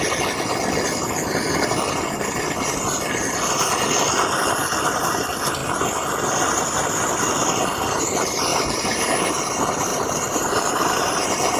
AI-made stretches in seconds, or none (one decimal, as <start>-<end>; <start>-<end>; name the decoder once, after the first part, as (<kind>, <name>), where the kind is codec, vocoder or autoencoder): 8.5-9.2 (vocoder, BigVGAN v2); 9.9-11.6